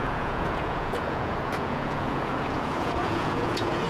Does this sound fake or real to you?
fake